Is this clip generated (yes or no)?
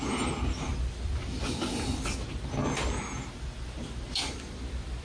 no